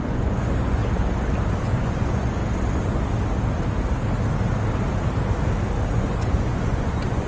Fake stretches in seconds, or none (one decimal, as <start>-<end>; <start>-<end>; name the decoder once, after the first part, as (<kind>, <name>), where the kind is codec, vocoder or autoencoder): 0.0-0.8 (vocoder, Vocos); 1.6-2.4; 5.9-7.3